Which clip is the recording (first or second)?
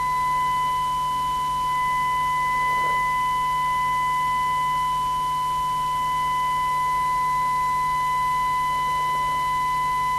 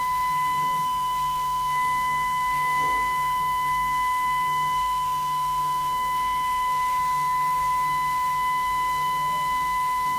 first